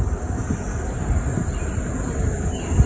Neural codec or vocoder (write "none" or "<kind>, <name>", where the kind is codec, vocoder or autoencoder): none